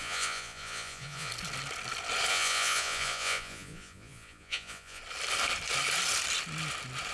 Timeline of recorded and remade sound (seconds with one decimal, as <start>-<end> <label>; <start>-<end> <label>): 0.0-1.3 remade; 1.3-2.3 recorded; 2.3-5.0 remade; 5.0-7.1 recorded